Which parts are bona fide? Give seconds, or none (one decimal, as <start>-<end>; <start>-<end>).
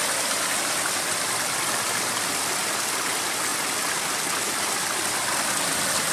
0.0-6.1